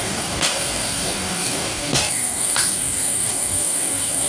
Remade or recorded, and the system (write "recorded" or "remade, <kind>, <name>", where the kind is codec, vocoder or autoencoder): remade, codec, DAC